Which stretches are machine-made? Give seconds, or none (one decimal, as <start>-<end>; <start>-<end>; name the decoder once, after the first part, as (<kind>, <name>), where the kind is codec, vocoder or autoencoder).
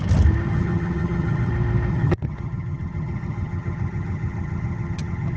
0.5-1.5 (vocoder, HiFi-GAN); 1.9-5.4